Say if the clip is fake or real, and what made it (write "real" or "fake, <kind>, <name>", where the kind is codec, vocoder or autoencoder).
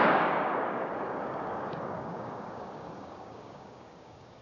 fake, codec, DAC